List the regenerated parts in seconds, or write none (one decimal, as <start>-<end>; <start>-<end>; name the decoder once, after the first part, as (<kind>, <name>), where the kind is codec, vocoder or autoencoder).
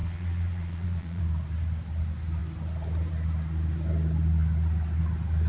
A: 0.0-1.2 (vocoder, Vocos)